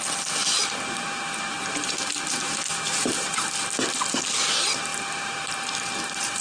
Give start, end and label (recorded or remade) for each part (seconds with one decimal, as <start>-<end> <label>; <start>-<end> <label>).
0.0-0.4 recorded; 0.4-3.4 remade; 3.4-4.9 recorded; 4.9-6.4 remade